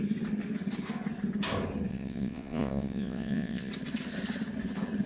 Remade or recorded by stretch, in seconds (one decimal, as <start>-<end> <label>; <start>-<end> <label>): 0.0-1.9 recorded; 1.9-3.7 remade; 3.7-5.1 recorded

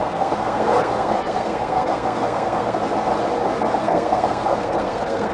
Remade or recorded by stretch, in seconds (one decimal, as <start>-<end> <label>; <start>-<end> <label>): 0.0-2.8 remade; 2.8-3.8 recorded; 3.8-5.3 remade

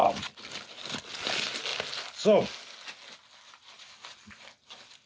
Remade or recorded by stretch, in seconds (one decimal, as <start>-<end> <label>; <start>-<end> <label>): 0.0-5.1 recorded

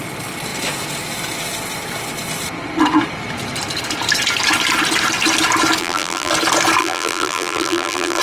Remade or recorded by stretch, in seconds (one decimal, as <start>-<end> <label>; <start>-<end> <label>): 0.0-5.8 recorded; 5.8-6.3 remade; 6.3-6.8 recorded; 6.8-8.2 remade

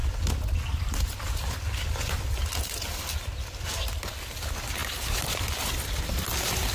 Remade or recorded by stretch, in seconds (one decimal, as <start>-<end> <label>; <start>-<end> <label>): 0.0-4.8 recorded; 4.8-5.4 remade; 5.4-6.7 recorded

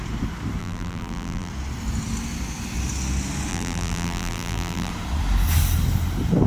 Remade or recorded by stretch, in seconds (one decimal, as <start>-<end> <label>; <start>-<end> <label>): 0.0-0.6 recorded; 0.6-1.5 remade; 1.5-3.5 recorded; 3.5-4.9 remade; 4.9-6.5 recorded

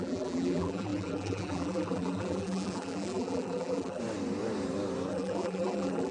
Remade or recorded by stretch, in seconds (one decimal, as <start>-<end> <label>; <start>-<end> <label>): 0.0-4.0 remade; 4.0-5.1 recorded; 5.1-6.1 remade